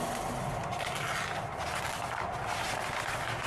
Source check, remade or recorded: recorded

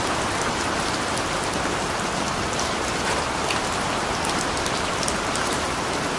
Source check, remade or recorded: recorded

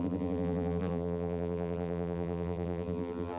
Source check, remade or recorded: remade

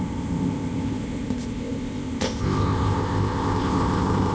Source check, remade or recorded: remade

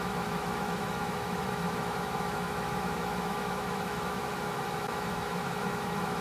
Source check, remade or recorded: remade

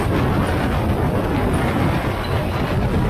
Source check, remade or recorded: recorded